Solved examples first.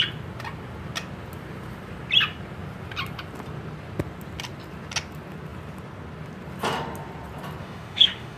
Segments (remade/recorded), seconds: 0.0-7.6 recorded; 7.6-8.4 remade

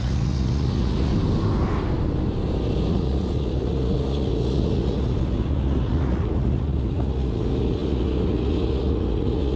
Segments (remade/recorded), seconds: 0.0-1.1 remade; 1.1-2.9 recorded; 2.9-9.6 remade

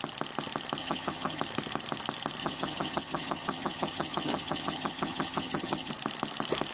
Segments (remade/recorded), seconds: 0.0-0.8 recorded; 0.8-1.4 remade; 1.4-2.4 recorded; 2.4-5.9 remade; 5.9-6.7 recorded

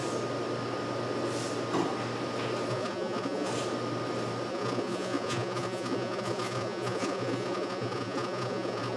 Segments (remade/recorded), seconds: 0.0-2.7 recorded; 2.7-3.5 remade; 3.5-4.5 recorded; 4.5-9.0 remade